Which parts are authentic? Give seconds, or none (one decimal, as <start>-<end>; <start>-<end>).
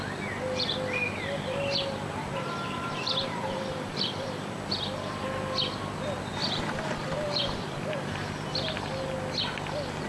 0.0-2.2; 4.6-6.4; 8.1-10.1